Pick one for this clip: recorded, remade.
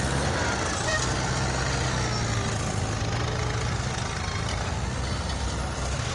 recorded